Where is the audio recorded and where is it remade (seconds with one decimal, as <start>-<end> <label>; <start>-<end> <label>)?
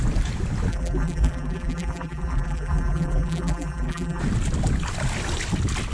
0.0-0.7 recorded; 0.7-4.2 remade; 4.2-5.9 recorded